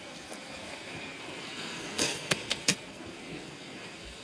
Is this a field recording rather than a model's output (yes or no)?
no